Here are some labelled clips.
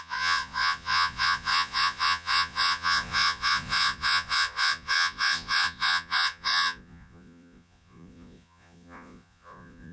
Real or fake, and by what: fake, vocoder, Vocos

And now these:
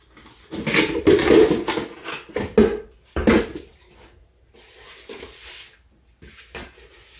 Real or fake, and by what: real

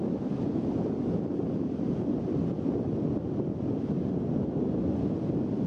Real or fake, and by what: real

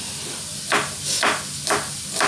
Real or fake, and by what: real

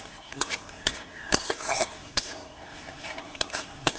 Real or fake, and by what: fake, codec, SNAC